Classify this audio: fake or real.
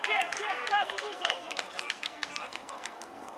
fake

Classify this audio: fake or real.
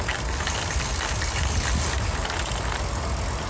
real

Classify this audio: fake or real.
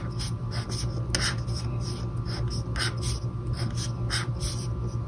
real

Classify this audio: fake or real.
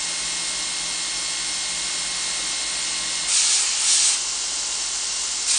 real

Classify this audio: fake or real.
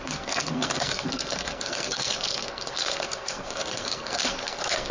fake